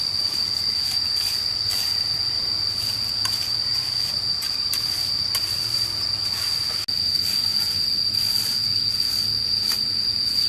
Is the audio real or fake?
real